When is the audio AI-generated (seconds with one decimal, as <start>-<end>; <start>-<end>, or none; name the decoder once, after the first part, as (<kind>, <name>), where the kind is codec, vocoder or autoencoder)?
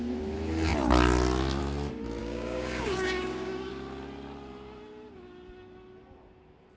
2.2-3.7 (codec, DAC)